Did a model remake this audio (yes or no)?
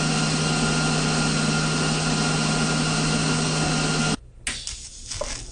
no